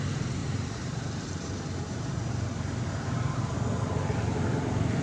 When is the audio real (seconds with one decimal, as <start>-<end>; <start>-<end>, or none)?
0.0-0.4; 3.4-5.0